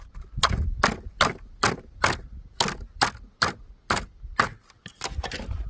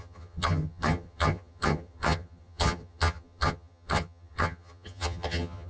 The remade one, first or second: second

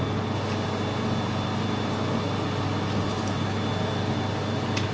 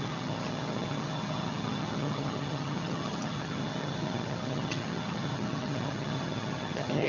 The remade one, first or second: second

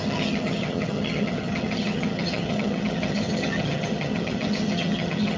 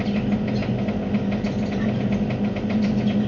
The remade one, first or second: first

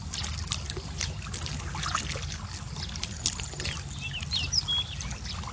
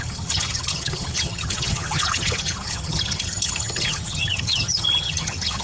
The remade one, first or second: second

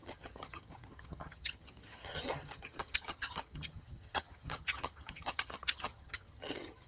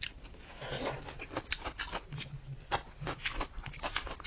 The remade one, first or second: first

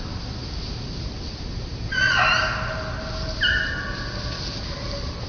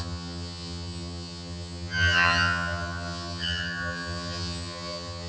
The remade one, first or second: second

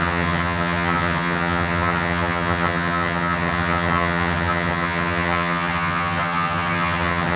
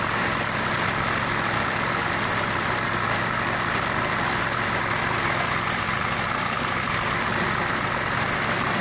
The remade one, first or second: first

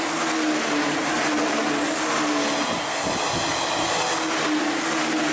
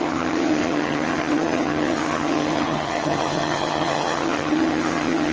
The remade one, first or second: second